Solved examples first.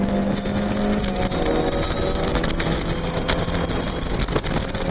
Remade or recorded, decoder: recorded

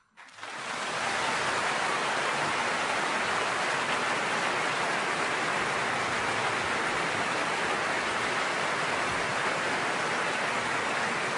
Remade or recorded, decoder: recorded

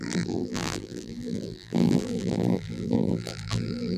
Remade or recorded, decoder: remade, vocoder, BigVGAN v2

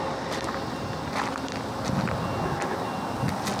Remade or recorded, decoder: recorded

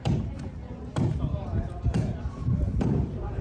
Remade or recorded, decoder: remade, vocoder, BigVGAN v2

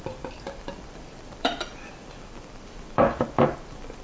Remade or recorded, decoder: remade, vocoder, BigVGAN v2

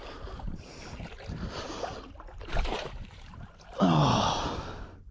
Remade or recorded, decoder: remade, vocoder, BigVGAN v2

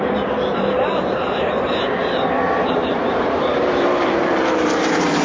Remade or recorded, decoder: remade, vocoder, BigVGAN v2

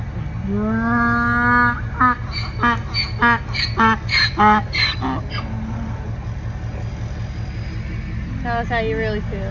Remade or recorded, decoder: recorded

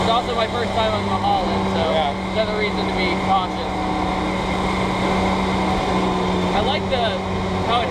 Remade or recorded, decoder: recorded